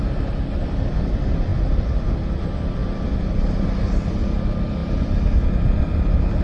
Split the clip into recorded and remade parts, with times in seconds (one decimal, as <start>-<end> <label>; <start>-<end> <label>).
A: 0.0-6.4 recorded